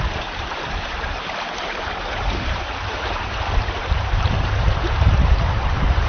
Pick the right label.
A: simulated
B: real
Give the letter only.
A